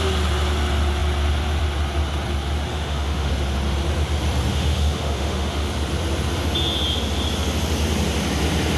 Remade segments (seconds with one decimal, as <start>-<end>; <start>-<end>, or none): 2.7-3.3; 4.5-5.7